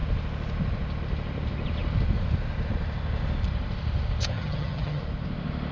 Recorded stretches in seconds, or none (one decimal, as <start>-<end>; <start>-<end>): 0.0-4.3; 5.0-5.7